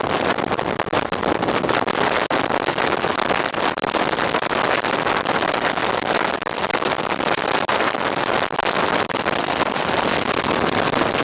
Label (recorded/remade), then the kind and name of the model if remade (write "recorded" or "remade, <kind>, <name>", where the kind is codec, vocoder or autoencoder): recorded